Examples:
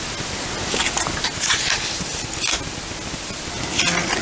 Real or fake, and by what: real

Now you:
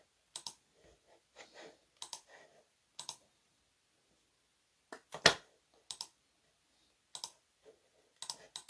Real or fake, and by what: real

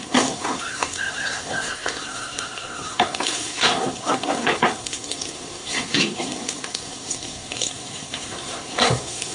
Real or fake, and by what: fake, codec, SNAC